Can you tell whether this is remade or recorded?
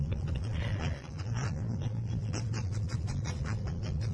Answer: remade